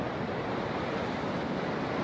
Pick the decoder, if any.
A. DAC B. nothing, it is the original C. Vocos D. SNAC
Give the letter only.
B